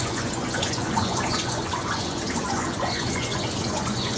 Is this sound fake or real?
fake